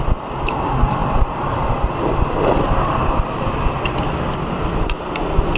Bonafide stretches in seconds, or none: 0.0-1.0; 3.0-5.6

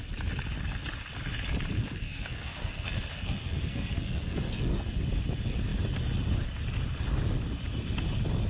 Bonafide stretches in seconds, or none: 0.0-1.8; 5.0-8.5

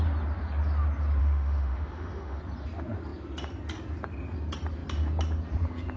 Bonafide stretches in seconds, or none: 0.0-1.2; 2.4-6.0